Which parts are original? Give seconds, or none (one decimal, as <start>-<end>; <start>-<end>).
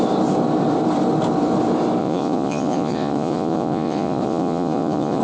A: 0.0-2.0